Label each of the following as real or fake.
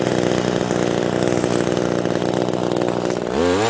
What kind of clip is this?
real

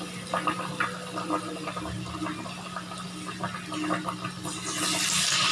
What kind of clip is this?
real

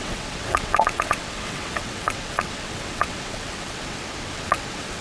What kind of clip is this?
fake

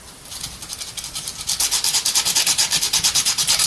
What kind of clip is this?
real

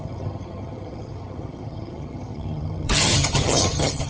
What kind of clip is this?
fake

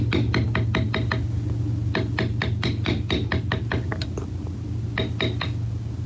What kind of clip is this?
real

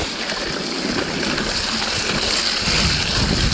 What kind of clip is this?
real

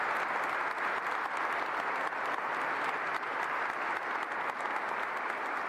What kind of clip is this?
real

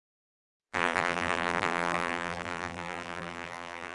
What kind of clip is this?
fake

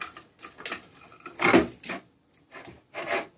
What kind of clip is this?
real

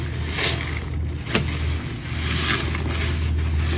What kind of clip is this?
real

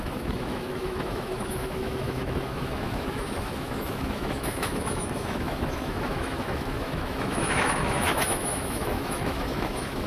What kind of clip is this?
fake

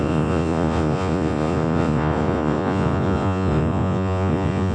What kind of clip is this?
fake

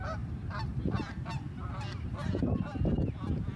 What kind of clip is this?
real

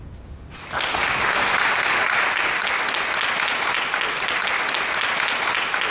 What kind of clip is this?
real